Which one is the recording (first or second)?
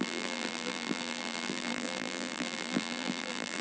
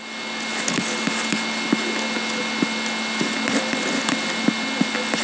second